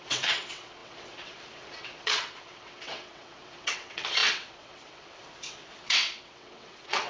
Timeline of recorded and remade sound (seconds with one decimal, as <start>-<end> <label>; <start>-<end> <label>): 0.0-7.1 remade